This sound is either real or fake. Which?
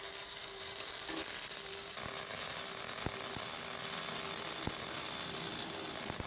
fake